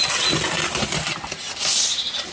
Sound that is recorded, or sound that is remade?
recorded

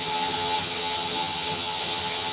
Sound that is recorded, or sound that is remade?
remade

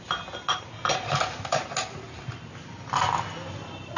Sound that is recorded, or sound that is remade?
recorded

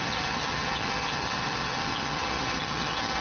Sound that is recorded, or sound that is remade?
remade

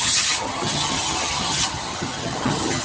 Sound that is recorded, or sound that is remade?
remade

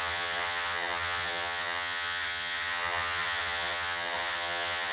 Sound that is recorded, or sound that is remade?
remade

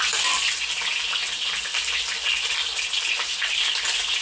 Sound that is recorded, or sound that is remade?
recorded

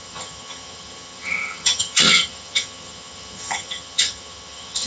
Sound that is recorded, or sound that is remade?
remade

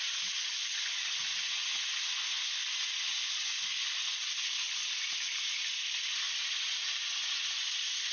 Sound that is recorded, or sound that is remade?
recorded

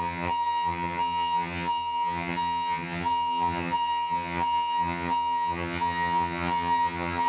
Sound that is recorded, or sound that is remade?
remade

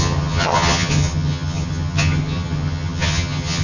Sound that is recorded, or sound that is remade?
remade